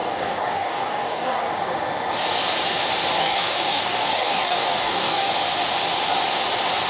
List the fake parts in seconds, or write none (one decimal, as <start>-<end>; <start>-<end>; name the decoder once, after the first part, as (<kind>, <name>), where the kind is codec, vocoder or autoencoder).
0.0-1.5 (codec, DAC); 3.2-5.3